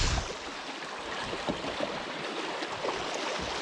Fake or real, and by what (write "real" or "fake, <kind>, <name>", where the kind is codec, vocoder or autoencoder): real